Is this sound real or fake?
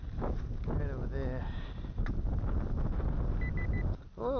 real